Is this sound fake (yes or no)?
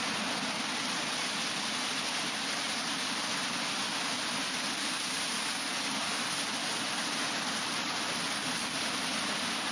no